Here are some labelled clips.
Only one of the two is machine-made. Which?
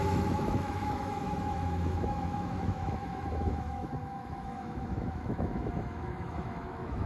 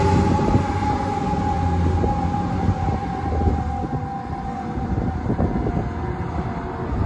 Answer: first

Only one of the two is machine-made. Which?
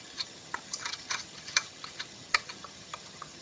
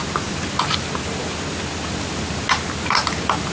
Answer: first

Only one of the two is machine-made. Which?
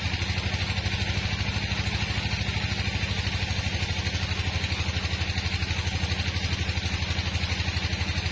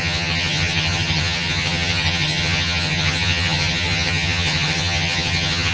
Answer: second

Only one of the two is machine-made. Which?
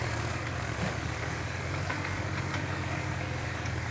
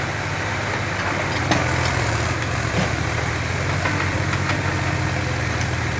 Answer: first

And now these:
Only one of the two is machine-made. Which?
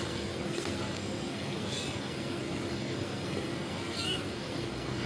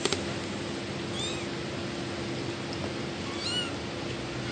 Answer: first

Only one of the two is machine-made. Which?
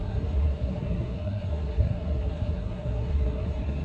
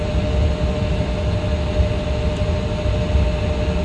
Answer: first